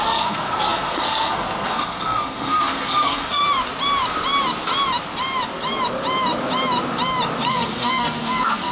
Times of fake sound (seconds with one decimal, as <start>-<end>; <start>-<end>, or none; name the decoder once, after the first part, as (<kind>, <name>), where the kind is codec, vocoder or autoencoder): 0.0-3.4 (codec, SNAC); 7.5-8.7